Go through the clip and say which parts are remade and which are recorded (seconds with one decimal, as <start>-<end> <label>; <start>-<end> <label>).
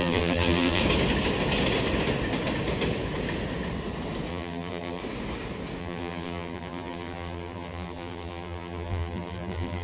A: 0.0-0.8 remade; 0.8-4.3 recorded; 4.3-5.0 remade; 5.0-5.8 recorded; 5.8-9.8 remade